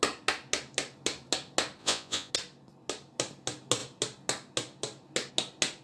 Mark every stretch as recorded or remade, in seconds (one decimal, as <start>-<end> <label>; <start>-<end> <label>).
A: 0.0-1.8 recorded; 1.8-2.3 remade; 2.3-5.8 recorded